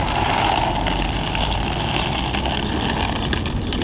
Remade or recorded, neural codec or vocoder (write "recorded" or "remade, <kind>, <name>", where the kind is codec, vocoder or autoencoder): recorded